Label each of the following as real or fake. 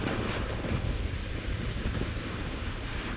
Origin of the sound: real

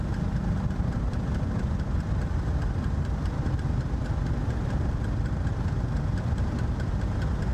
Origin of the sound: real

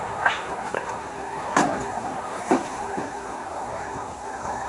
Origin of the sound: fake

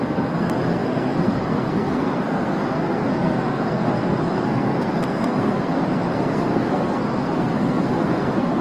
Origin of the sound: fake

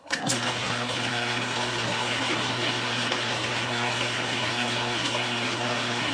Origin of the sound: fake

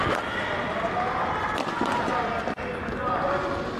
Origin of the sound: real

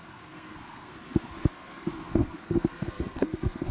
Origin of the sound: fake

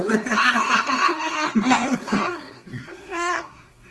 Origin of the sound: fake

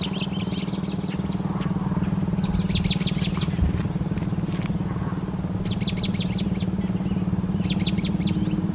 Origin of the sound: real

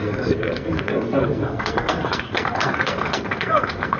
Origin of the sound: fake